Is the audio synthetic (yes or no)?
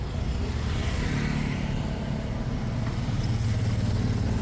no